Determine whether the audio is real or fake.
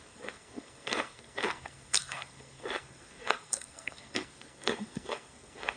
fake